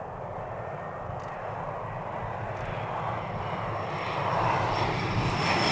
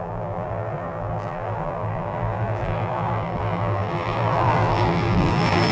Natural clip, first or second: first